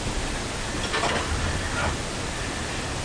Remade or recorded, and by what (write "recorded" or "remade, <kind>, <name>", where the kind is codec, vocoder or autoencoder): recorded